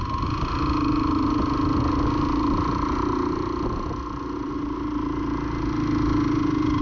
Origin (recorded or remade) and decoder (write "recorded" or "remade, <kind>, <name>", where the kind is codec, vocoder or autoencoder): recorded